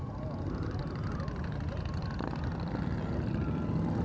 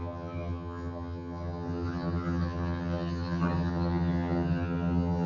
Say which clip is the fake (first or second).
second